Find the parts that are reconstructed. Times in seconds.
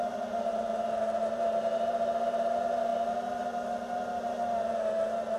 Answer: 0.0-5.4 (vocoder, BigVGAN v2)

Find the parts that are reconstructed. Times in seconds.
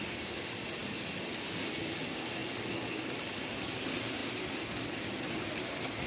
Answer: none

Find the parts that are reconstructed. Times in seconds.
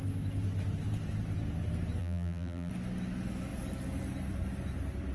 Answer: 2.0-2.7 (vocoder, BigVGAN v2)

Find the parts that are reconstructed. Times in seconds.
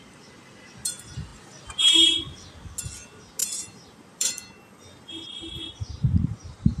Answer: 3.4-4.3 (vocoder, BigVGAN v2); 5.9-6.8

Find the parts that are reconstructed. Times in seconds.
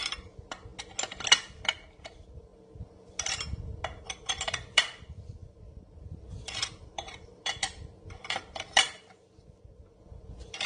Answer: 0.0-0.7 (vocoder, BigVGAN v2); 2.0-2.5; 4.0-10.7